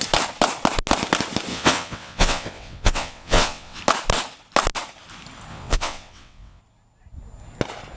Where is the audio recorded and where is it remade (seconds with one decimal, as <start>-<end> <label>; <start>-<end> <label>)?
0.0-1.5 recorded; 1.5-3.8 remade; 3.8-5.5 recorded; 5.5-6.6 remade; 6.6-8.0 recorded